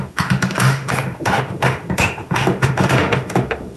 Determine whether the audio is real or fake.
fake